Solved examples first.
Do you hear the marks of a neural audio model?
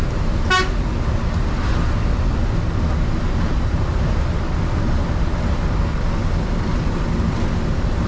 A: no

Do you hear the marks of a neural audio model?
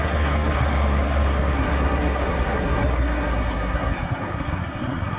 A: yes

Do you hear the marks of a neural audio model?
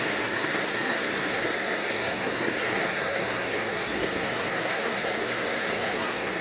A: yes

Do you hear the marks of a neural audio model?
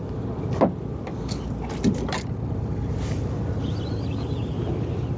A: no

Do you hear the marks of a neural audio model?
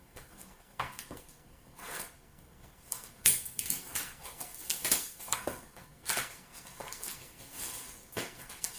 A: yes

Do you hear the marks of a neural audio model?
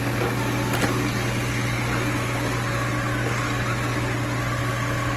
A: no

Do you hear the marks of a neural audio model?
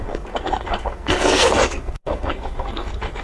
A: yes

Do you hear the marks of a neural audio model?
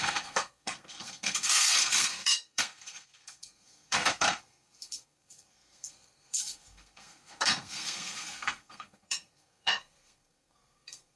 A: yes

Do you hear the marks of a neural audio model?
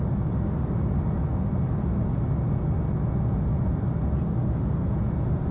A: no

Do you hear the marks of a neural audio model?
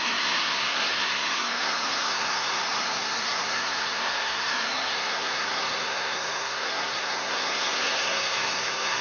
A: yes